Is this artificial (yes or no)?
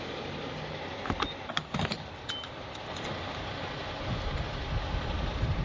no